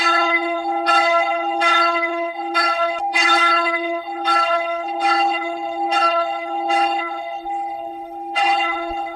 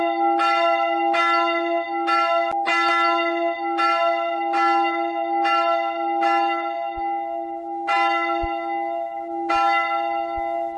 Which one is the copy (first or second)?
first